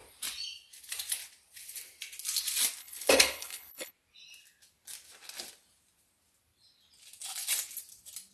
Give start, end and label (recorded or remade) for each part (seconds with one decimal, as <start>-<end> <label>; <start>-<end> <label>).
0.0-2.8 recorded; 2.8-3.9 remade; 3.9-8.3 recorded